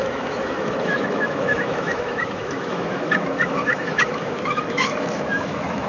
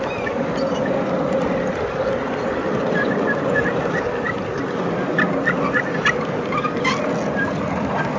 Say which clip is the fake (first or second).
first